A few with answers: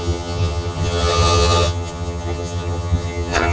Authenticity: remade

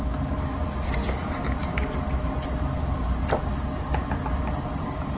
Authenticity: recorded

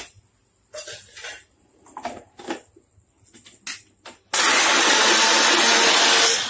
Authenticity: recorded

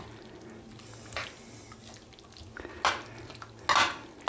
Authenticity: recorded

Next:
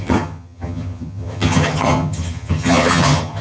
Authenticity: remade